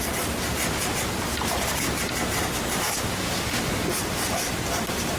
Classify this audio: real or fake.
real